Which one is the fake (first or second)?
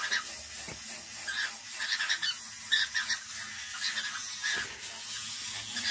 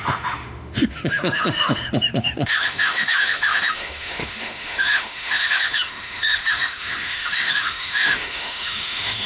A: second